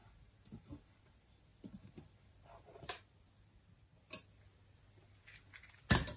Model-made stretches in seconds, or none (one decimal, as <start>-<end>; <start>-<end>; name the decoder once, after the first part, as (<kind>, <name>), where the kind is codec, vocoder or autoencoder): none